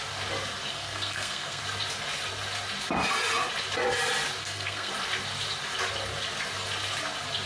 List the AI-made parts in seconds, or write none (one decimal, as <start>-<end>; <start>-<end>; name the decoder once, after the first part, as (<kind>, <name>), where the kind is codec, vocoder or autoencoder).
0.7-1.6 (codec, SNAC); 4.4-4.9